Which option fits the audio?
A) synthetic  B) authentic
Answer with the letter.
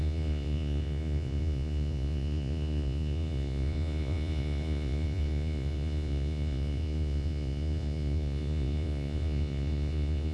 A